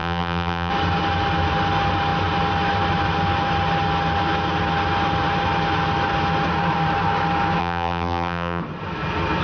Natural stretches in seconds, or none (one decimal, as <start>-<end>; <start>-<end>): 0.7-7.6; 8.6-9.4